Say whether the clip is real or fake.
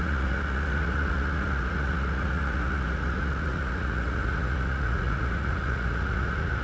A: fake